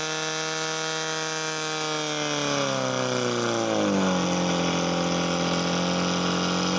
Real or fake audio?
real